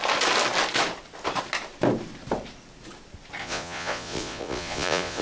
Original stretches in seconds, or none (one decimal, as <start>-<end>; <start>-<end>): 0.0-3.4